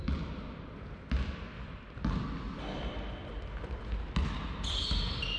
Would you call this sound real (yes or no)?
yes